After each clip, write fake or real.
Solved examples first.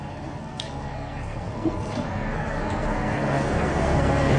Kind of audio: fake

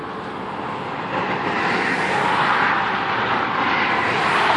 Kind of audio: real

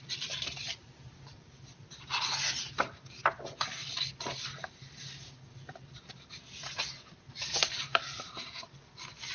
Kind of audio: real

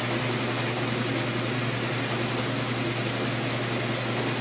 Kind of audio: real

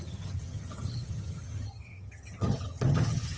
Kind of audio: fake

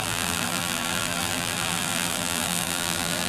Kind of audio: fake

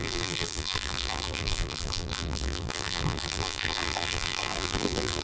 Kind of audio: fake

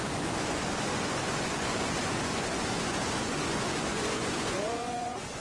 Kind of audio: fake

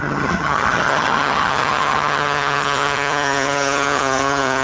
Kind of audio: fake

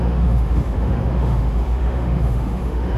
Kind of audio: fake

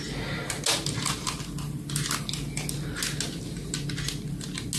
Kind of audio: real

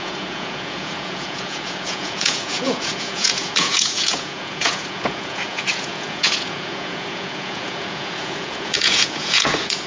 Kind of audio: fake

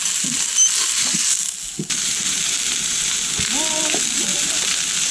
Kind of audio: real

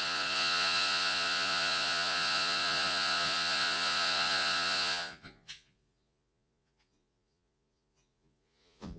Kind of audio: fake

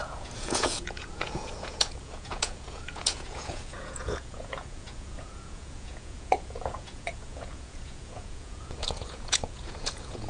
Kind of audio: fake